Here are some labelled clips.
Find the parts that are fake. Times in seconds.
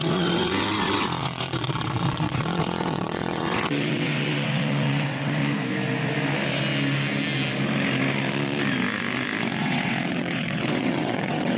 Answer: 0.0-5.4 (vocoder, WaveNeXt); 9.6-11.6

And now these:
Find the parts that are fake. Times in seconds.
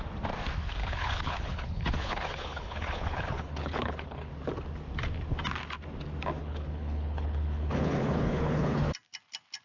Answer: 0.8-4.3 (codec, HILCodec); 6.4-8.8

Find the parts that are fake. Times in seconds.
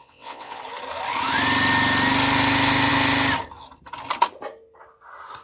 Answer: 0.0-0.6 (vocoder, WaveNeXt)